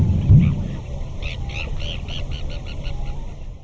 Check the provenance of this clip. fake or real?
real